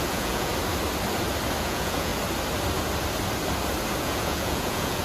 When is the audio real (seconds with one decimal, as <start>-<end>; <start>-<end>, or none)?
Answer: 0.5-1.6; 2.1-4.0